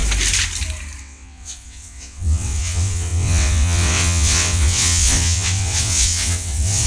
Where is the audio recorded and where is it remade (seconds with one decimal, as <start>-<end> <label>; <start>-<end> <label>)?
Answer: 0.0-1.0 recorded; 1.0-6.9 remade